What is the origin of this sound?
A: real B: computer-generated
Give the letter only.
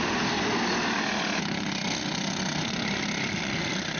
A